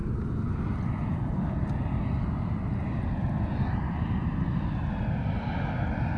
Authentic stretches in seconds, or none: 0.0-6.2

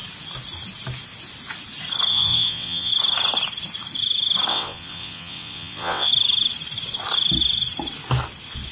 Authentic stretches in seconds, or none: 0.0-2.1; 2.9-4.5; 6.1-8.7

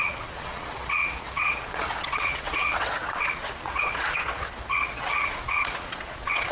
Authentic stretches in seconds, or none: none

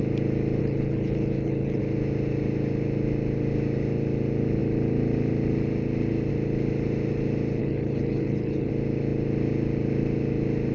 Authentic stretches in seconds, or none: 0.0-0.6; 1.8-7.6; 8.7-10.7

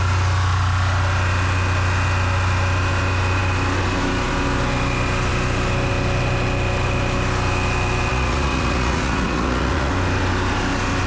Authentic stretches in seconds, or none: 0.0-8.1; 9.9-11.1

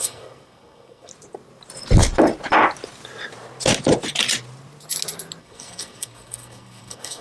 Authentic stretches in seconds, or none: 1.1-5.4